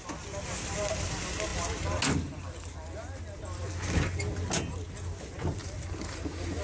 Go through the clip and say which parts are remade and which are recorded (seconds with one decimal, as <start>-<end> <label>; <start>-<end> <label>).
0.0-6.6 recorded